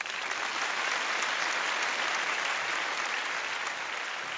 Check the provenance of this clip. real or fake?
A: real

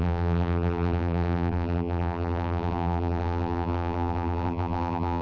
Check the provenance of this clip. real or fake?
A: fake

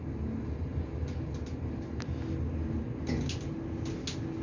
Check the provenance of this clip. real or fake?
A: real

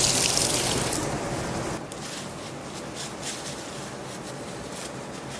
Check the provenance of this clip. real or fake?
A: real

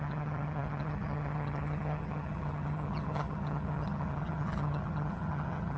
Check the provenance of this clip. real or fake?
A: fake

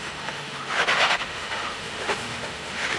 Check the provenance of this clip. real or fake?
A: fake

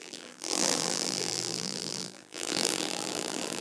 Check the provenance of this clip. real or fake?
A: fake